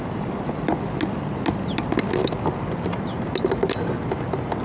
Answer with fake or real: real